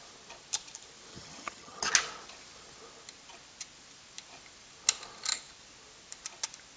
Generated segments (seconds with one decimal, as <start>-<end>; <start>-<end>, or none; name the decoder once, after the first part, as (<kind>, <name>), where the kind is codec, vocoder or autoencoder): 1.1-1.9 (vocoder, HiFi-GAN)